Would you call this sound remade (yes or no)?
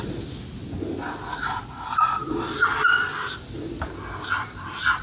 no